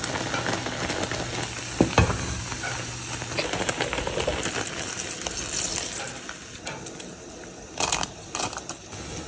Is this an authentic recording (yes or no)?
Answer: yes